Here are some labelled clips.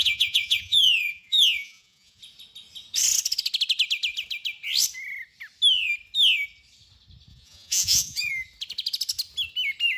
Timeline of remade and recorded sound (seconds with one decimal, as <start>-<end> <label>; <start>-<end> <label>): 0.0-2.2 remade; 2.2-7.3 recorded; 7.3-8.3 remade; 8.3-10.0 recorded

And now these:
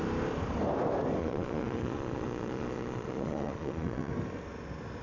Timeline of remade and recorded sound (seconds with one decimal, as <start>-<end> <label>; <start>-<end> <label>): 0.0-1.2 recorded; 1.2-4.1 remade; 4.1-5.0 recorded

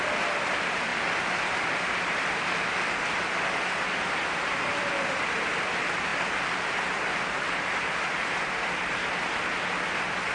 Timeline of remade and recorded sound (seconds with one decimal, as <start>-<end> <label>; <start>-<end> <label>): 0.0-10.3 recorded

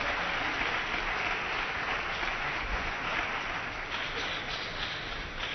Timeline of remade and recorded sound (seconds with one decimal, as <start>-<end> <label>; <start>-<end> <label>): 0.0-2.3 recorded; 2.3-3.0 remade; 3.0-5.5 recorded